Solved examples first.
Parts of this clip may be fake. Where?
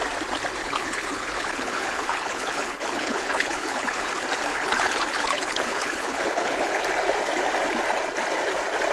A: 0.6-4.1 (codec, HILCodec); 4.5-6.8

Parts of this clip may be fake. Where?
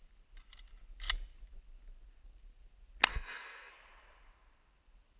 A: 3.1-3.7 (codec, SNAC)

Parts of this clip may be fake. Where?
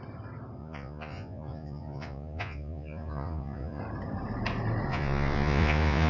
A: 0.6-3.8 (vocoder, Vocos); 4.9-6.1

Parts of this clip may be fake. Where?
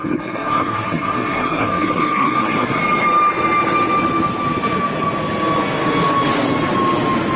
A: 0.0-2.8 (codec, SNAC)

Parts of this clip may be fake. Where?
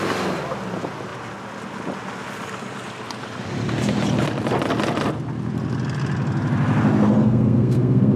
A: 7.2-8.2 (codec, SNAC)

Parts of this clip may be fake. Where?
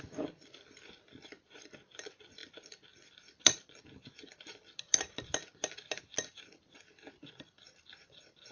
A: 0.0-8.5 (vocoder, BigVGAN v2)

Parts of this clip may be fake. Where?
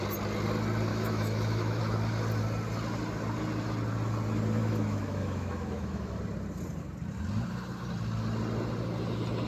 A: 0.9-1.8 (autoencoder, DAC-VAE); 4.6-6.2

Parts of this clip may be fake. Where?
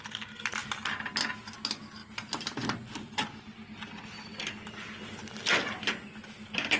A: none